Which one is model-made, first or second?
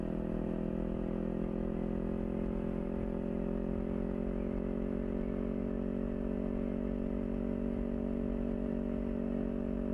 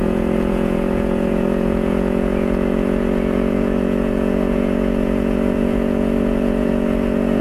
second